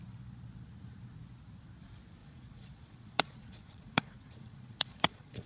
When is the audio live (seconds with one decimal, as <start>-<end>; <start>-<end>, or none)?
0.0-2.2